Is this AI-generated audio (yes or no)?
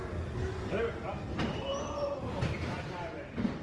no